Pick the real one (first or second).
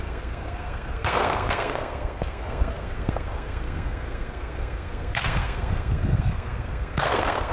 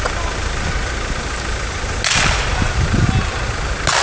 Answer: second